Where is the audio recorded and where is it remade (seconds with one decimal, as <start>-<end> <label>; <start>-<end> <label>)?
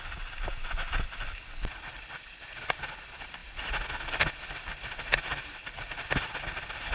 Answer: 0.0-6.9 recorded